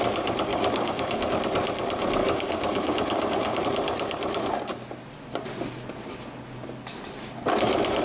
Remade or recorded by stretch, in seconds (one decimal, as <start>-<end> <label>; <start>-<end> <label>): 0.0-0.5 recorded; 0.5-1.3 remade; 1.3-2.2 recorded; 2.2-3.6 remade; 3.6-8.0 recorded

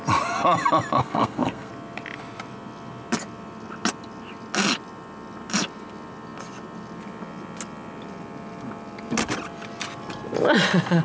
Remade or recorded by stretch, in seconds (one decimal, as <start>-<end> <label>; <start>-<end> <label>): 0.0-1.0 recorded; 1.0-1.7 remade; 1.7-11.0 recorded

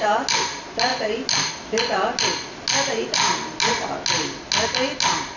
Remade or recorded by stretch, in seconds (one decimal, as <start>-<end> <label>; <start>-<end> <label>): 0.0-5.4 recorded

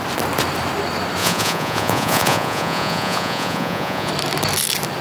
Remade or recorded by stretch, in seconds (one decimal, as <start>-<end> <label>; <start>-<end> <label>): 0.0-1.2 recorded; 1.2-4.1 remade; 4.1-5.0 recorded

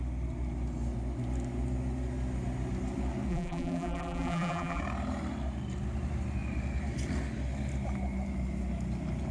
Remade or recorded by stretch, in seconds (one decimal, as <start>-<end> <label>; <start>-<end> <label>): 0.0-3.3 recorded; 3.3-4.8 remade; 4.8-9.3 recorded

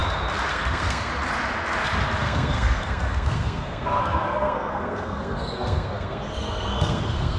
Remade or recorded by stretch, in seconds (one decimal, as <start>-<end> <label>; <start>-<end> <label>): 0.0-0.5 recorded; 0.5-1.1 remade; 1.1-2.2 recorded; 2.2-7.4 remade

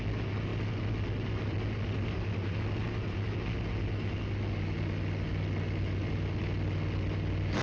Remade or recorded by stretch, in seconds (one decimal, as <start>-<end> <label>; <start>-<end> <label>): 0.0-7.6 recorded